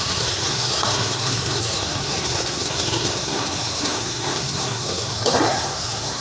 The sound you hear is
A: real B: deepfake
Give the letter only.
B